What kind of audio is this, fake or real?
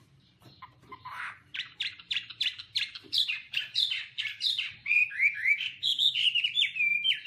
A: fake